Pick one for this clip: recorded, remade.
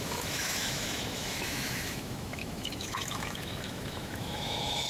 remade